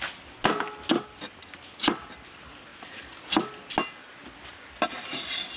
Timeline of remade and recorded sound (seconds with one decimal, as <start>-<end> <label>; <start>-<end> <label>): 0.0-5.6 recorded